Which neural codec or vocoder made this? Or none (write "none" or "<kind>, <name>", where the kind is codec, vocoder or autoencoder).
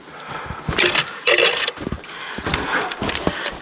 none